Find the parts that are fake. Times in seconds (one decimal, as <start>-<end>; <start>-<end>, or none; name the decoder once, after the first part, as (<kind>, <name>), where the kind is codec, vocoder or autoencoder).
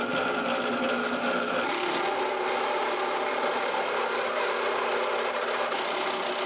1.0-1.5 (autoencoder, DAC-VAE)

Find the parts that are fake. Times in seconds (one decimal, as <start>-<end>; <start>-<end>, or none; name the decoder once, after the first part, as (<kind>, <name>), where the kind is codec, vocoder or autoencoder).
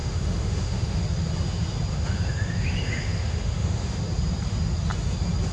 0.0-1.0 (autoencoder, DAC-VAE); 1.9-4.0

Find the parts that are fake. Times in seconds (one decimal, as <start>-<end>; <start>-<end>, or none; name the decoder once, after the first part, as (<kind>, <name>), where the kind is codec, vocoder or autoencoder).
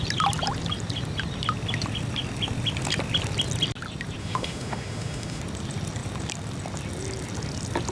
4.2-5.4 (autoencoder, DAC-VAE)